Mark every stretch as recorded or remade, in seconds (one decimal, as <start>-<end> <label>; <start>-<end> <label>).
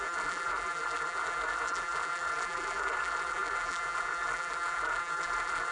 0.0-5.7 remade